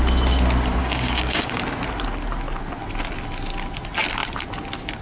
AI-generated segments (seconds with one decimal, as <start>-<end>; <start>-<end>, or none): 0.8-1.6